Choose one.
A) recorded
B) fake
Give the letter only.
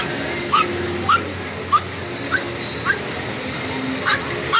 A